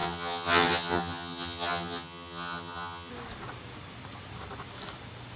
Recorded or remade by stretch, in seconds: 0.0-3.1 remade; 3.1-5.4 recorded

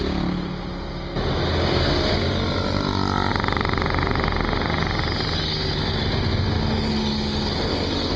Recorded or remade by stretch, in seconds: 0.0-8.2 recorded

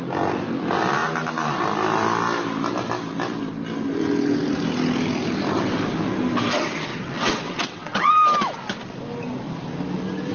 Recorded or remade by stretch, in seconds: 0.0-6.9 recorded; 6.9-8.1 remade; 8.1-10.3 recorded

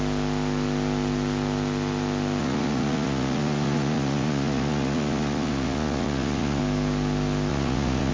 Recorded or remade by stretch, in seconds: 0.0-2.4 recorded; 2.4-6.6 remade; 6.6-7.5 recorded; 7.5-8.1 remade

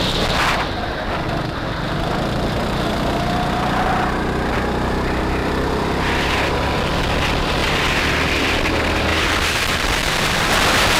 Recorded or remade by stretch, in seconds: 0.0-5.4 recorded; 5.4-6.5 remade; 6.5-7.6 recorded; 7.6-8.7 remade; 8.7-9.1 recorded; 9.1-10.5 remade; 10.5-11.0 recorded

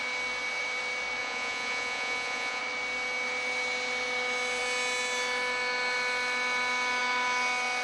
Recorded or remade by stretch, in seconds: 0.0-1.2 recorded; 1.2-2.6 remade; 2.6-7.8 recorded

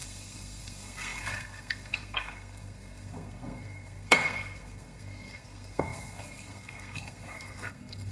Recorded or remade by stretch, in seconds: 0.0-8.1 remade

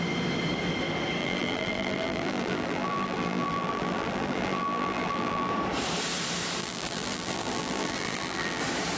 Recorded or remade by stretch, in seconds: 0.0-1.2 recorded; 1.2-5.5 remade; 5.5-6.6 recorded; 6.6-8.6 remade; 8.6-9.0 recorded